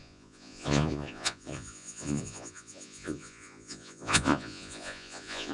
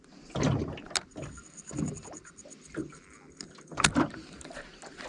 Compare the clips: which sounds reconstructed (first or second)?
first